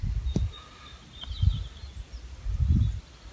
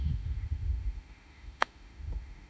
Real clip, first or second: first